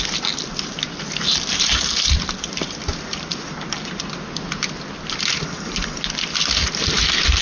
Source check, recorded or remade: recorded